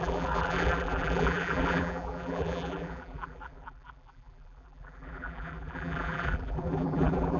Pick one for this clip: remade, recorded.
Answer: remade